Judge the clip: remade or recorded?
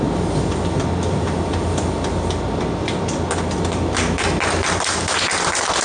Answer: recorded